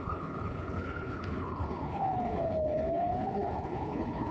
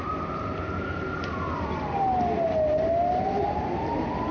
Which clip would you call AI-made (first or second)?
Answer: first